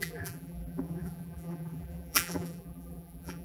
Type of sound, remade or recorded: remade